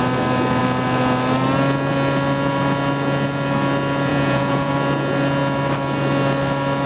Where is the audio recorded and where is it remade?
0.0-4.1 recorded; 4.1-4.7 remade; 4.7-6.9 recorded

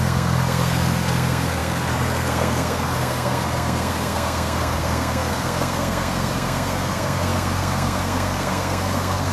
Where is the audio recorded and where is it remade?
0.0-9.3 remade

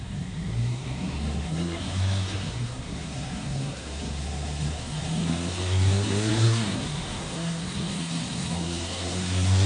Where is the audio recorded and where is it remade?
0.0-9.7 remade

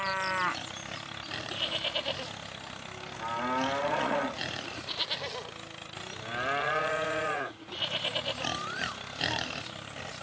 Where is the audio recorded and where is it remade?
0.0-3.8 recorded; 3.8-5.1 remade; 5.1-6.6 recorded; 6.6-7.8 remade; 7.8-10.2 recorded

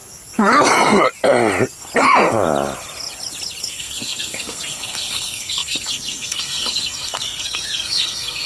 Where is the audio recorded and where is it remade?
0.0-3.6 recorded; 3.6-8.5 remade

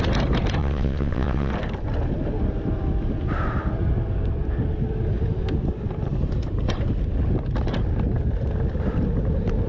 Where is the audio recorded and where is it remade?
0.0-0.6 recorded; 0.6-1.5 remade; 1.5-9.7 recorded